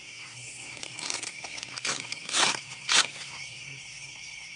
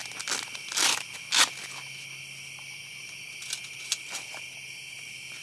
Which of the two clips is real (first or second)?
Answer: second